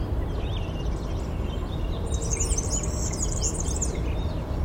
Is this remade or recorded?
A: recorded